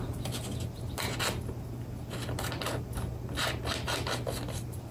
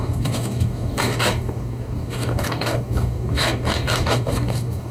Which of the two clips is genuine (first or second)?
first